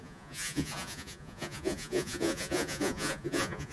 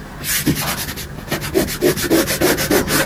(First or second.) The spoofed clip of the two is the first